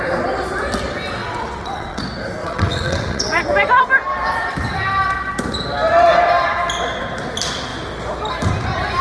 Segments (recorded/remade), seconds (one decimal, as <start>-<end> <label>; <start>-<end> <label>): 0.0-1.2 recorded; 1.2-2.0 remade; 2.0-2.4 recorded; 2.4-3.4 remade; 3.4-9.0 recorded